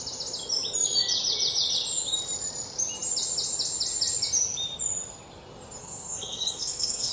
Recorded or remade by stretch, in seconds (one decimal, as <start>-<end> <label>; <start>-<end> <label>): 0.0-5.8 recorded; 5.8-7.1 remade